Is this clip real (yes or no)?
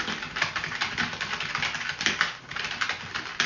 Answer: yes